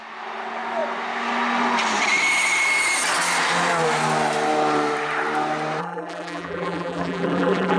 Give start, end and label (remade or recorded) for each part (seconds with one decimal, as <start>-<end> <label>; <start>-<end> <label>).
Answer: 0.0-5.8 recorded; 5.8-7.8 remade